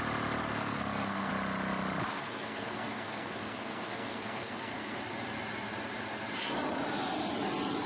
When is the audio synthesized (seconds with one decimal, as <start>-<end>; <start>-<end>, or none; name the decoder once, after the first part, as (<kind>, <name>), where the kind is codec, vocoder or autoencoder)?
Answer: 0.4-1.3 (codec, SNAC); 2.1-5.0